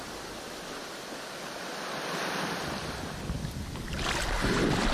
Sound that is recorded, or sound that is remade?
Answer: recorded